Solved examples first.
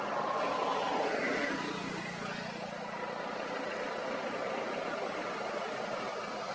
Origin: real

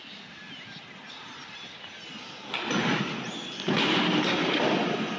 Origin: real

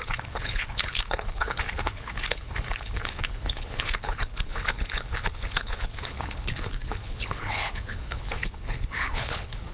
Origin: fake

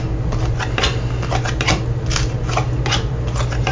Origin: real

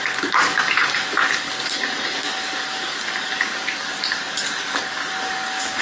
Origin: fake